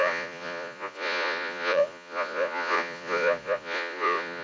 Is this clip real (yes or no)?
no